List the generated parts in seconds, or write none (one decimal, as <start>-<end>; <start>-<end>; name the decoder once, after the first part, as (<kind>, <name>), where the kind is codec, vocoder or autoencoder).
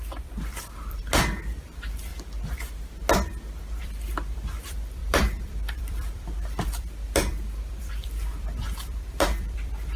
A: 0.0-1.0 (vocoder, BigVGAN v2); 1.6-2.1; 3.8-10.0